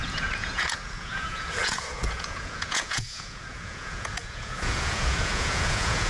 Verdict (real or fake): fake